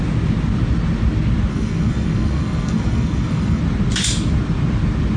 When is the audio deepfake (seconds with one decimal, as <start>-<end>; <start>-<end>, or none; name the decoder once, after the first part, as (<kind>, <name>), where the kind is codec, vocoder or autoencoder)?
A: 1.5-3.6 (codec, SNAC)